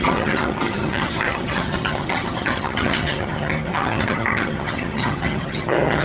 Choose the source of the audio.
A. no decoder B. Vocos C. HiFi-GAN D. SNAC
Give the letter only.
C